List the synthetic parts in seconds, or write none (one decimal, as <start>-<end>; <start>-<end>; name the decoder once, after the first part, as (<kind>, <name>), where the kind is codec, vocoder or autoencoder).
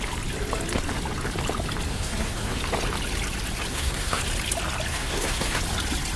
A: 1.9-2.6 (codec, SNAC); 3.7-4.2; 4.9-5.6